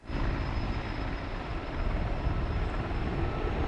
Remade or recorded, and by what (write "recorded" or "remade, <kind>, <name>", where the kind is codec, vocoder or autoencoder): recorded